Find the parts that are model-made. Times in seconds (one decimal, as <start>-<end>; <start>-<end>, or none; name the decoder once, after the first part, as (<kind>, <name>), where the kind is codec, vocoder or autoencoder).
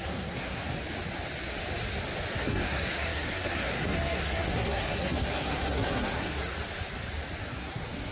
0.0-0.6 (codec, SNAC); 2.3-6.5; 7.4-8.1